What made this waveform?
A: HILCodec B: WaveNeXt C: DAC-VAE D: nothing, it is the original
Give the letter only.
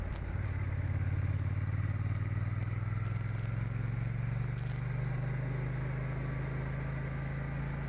D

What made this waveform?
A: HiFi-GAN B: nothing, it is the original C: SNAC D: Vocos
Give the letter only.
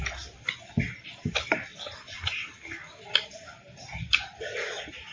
B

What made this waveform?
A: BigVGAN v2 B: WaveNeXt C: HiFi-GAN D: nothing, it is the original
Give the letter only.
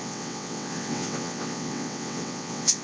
B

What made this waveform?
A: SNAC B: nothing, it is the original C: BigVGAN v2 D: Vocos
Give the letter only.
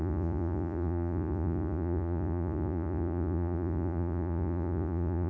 D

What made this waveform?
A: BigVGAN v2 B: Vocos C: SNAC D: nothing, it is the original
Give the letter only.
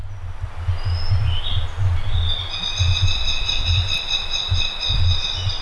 D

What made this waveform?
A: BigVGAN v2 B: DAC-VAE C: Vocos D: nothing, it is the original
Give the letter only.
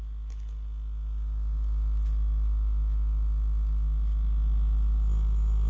D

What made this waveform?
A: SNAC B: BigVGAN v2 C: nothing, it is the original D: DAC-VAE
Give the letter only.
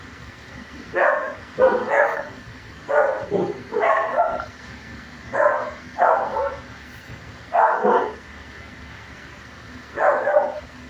A